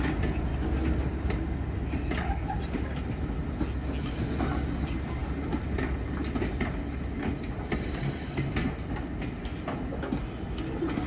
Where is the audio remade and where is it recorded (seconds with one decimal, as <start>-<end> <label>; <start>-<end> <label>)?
0.0-11.1 recorded